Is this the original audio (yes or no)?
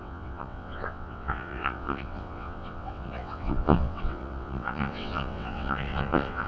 no